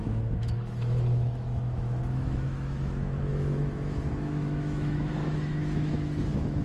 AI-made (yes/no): yes